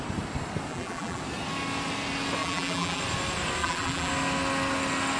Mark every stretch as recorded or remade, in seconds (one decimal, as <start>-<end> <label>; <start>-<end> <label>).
0.0-0.7 recorded; 0.7-1.2 remade; 1.2-2.4 recorded; 2.4-3.0 remade; 3.0-3.6 recorded; 3.6-4.1 remade; 4.1-5.2 recorded